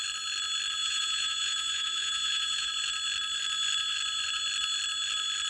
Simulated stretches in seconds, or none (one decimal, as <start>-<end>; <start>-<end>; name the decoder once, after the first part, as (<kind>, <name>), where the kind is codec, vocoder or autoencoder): 0.8-2.7 (vocoder, Vocos)